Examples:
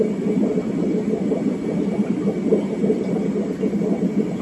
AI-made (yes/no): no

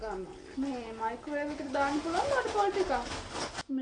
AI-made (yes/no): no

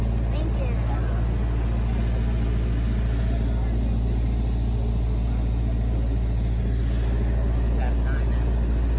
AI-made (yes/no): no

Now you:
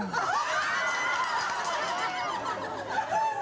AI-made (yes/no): no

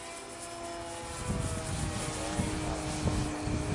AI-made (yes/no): no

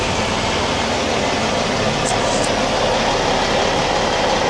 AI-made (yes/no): no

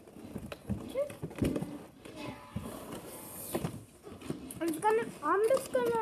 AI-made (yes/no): no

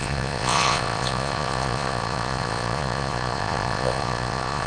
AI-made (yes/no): yes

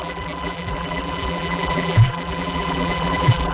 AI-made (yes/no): yes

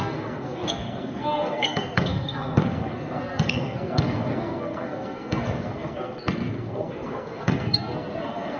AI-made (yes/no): yes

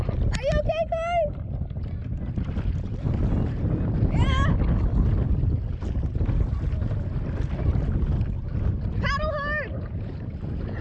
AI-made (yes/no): no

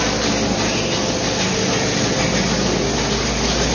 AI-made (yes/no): no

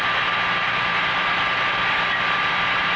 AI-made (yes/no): no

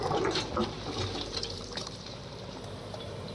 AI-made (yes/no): yes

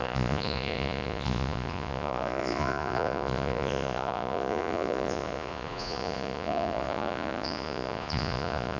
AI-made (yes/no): yes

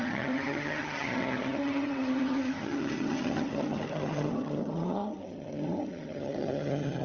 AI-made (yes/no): yes